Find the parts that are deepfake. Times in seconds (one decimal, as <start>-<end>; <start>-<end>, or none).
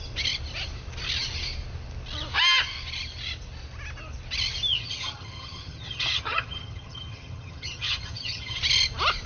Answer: 4.7-8.6